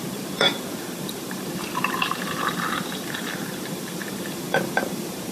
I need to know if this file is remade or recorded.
remade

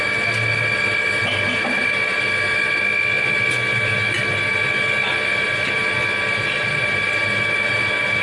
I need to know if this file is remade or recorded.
recorded